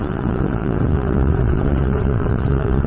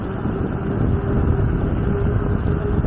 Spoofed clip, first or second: first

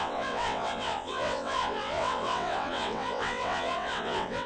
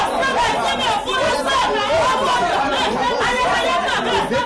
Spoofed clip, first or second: first